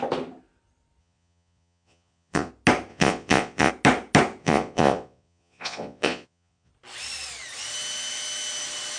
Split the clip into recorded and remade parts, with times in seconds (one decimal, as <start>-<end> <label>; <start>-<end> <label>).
0.0-1.0 recorded; 1.0-2.5 remade; 2.5-2.9 recorded; 2.9-3.7 remade; 3.7-4.4 recorded; 4.4-6.7 remade; 6.7-9.0 recorded